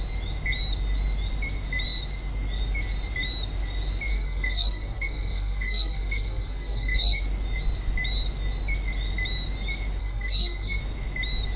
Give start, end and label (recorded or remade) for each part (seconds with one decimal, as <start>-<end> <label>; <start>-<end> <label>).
0.0-4.1 recorded; 4.1-7.2 remade; 7.2-10.0 recorded; 10.0-10.8 remade; 10.8-11.6 recorded